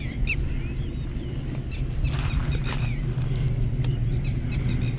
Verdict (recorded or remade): recorded